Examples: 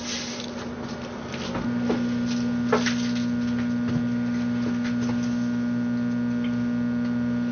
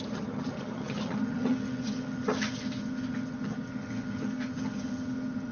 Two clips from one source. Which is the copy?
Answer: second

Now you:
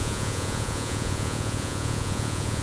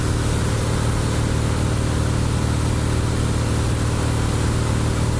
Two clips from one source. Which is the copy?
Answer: first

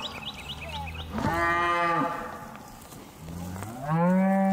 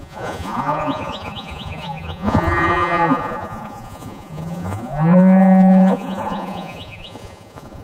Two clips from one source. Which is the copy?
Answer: second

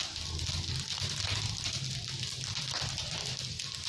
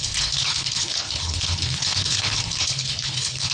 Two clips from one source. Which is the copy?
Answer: second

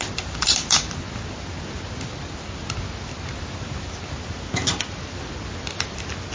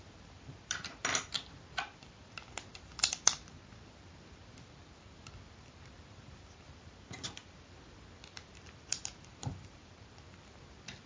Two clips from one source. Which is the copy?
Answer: second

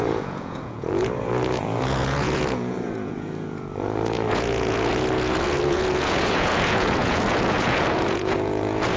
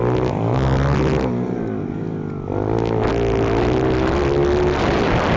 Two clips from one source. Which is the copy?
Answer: first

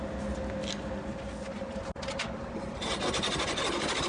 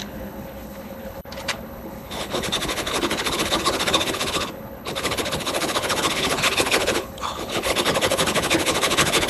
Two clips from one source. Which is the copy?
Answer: second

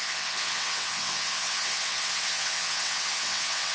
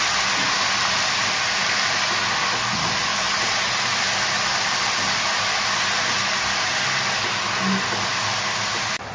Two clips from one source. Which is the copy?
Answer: first